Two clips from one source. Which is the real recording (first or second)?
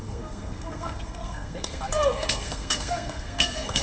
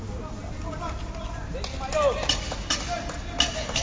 second